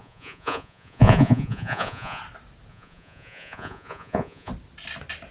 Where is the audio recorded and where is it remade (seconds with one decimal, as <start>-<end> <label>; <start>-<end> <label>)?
0.0-2.2 remade; 2.2-2.7 recorded; 2.7-4.5 remade; 4.5-5.3 recorded